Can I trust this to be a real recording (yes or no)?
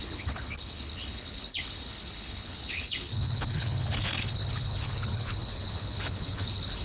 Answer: no